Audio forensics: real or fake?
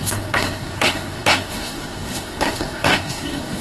fake